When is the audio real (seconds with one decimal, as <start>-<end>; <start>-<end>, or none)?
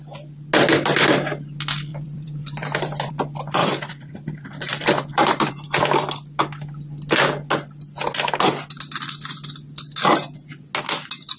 0.0-1.9; 3.1-3.6; 5.5-11.4